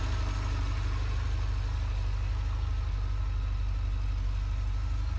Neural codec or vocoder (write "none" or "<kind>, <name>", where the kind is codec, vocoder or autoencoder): none